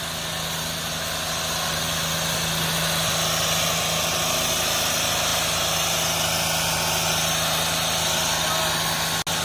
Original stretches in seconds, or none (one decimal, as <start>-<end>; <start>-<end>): 0.0-9.4